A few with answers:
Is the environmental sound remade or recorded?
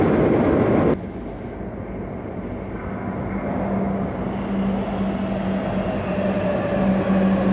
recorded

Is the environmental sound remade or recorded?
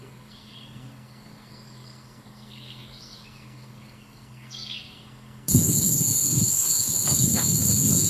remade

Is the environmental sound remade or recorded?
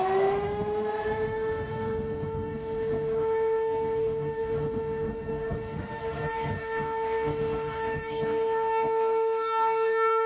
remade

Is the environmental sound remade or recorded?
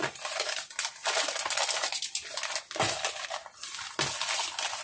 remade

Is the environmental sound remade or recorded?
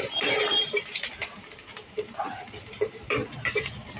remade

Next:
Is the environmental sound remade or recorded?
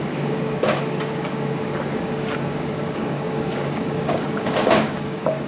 remade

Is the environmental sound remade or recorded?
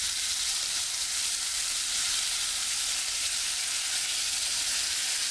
recorded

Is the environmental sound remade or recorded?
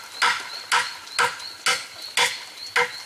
recorded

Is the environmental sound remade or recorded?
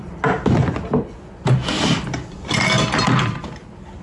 recorded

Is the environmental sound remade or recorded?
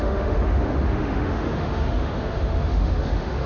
remade